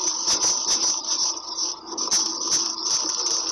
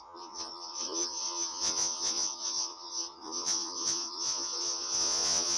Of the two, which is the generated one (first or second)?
second